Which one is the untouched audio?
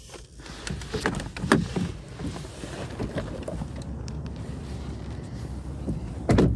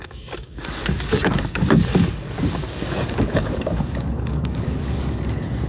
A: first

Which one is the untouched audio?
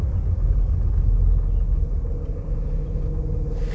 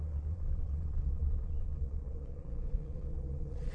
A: first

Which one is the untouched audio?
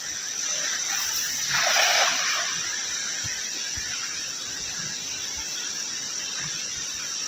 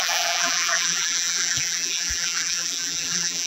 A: first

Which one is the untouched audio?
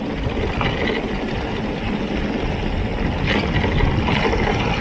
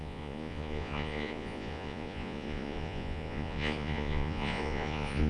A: first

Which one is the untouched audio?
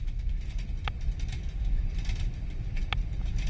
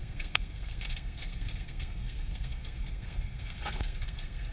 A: first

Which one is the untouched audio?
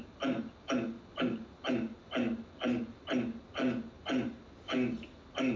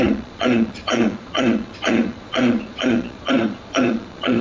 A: first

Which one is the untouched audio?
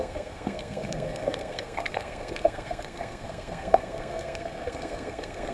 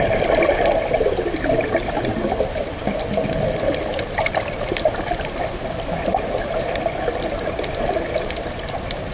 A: second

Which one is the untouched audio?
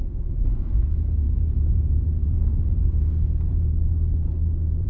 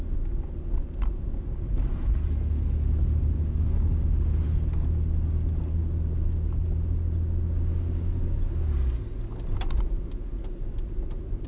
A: second